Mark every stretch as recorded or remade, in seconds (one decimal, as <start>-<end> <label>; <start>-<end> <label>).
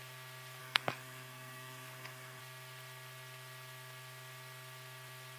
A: 0.0-0.6 recorded; 0.6-2.4 remade; 2.4-5.4 recorded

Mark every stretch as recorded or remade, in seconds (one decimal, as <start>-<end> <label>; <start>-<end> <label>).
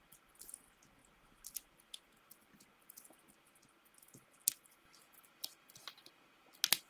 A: 0.0-6.9 recorded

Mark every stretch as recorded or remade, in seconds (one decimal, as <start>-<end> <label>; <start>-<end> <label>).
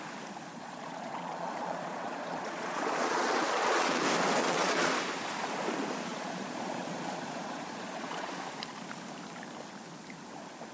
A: 0.0-0.5 recorded; 0.5-4.0 remade; 4.0-4.4 recorded; 4.4-4.9 remade; 4.9-6.1 recorded; 6.1-8.3 remade; 8.3-10.7 recorded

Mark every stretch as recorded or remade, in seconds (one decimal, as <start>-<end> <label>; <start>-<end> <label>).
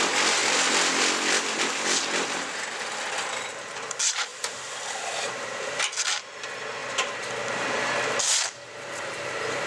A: 0.0-0.4 recorded; 0.4-1.6 remade; 1.6-4.3 recorded; 4.3-5.9 remade; 5.9-9.7 recorded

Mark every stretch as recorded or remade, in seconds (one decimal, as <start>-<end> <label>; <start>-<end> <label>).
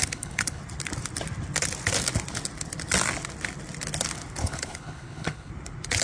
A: 0.0-0.6 remade; 0.6-4.4 recorded; 4.4-5.5 remade; 5.5-6.0 recorded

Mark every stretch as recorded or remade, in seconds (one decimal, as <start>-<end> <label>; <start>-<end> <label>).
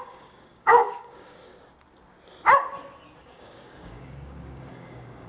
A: 0.0-1.5 remade; 1.5-3.2 recorded; 3.2-5.3 remade